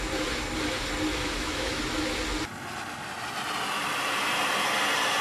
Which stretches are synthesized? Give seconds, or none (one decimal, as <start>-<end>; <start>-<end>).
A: 1.1-1.8

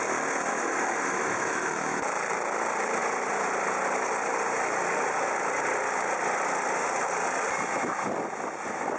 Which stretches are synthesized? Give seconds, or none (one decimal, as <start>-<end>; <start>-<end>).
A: 0.5-2.0

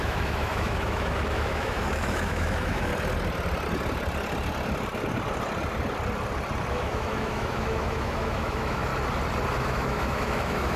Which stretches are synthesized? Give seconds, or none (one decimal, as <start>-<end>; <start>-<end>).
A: 0.0-2.9; 6.7-8.9; 9.5-10.8

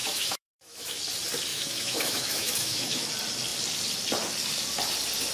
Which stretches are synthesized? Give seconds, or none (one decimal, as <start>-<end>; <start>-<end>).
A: 0.0-1.0; 1.5-3.1

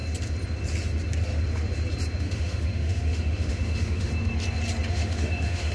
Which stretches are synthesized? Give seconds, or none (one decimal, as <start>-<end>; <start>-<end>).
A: 2.2-4.1; 4.9-5.7